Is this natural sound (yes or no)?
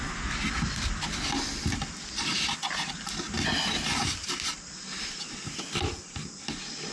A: yes